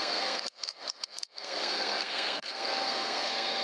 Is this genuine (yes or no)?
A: no